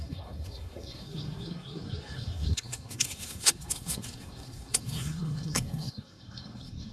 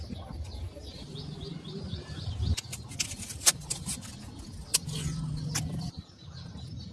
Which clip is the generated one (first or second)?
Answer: first